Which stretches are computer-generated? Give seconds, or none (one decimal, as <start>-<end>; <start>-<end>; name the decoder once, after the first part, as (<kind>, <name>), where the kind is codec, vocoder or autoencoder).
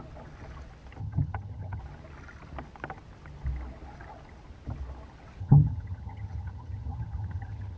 1.0-1.8 (vocoder, HiFi-GAN); 5.4-7.8